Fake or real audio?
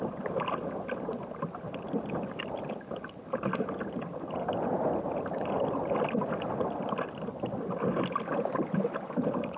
real